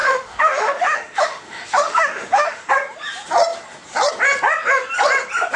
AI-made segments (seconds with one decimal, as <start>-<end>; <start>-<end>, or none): 0.0-2.7